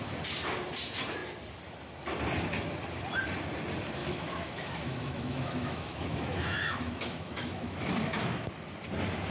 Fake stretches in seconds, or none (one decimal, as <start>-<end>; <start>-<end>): 4.0-8.5